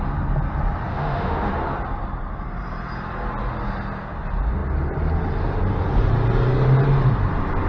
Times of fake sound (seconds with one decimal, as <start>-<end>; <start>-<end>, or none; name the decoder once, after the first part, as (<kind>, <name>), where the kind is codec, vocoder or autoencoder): 0.9-1.5 (autoencoder, DAC-VAE)